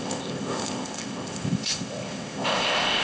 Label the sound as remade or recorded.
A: remade